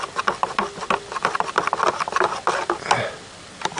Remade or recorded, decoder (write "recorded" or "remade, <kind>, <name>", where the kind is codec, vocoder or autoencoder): recorded